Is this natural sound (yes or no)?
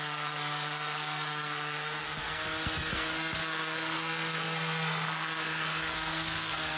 no